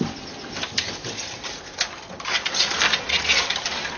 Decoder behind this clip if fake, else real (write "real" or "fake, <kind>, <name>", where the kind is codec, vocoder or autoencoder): real